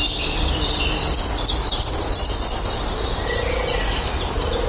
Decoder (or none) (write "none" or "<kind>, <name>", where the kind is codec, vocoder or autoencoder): none